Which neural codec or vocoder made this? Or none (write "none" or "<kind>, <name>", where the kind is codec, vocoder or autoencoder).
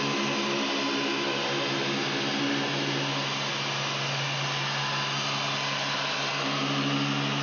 none